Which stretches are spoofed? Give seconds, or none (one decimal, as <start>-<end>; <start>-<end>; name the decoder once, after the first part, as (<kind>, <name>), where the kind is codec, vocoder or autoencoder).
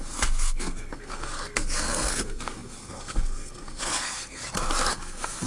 0.0-4.4 (codec, SNAC); 4.9-5.5